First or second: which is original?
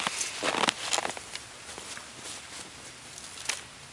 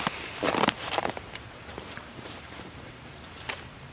first